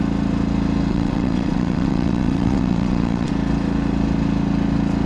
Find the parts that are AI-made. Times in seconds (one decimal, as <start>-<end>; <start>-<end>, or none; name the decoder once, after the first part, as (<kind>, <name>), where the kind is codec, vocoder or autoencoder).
0.9-3.3 (vocoder, WaveNeXt)